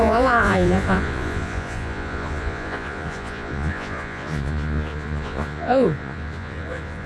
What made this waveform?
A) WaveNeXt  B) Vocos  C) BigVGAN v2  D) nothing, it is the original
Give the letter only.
B